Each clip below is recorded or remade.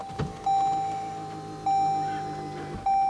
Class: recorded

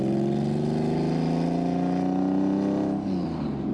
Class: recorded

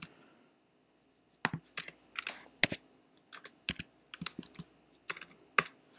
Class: recorded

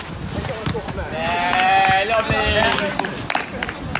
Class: recorded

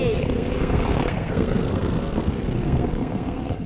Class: remade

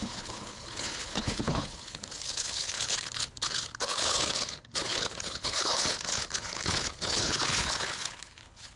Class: remade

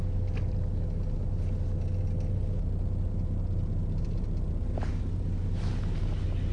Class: recorded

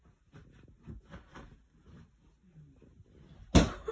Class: recorded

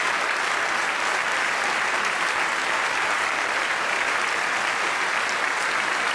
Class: recorded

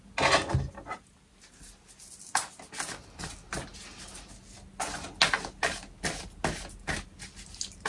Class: recorded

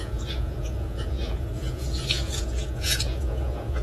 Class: remade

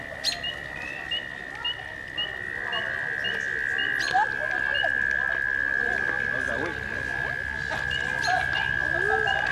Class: recorded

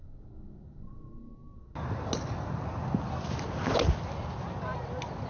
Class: recorded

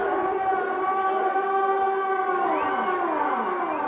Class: recorded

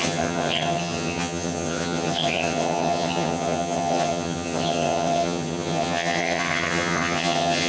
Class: remade